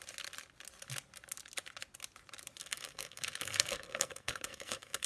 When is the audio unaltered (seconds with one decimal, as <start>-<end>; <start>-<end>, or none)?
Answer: 0.0-2.6